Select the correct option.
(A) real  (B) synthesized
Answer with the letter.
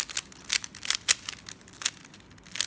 A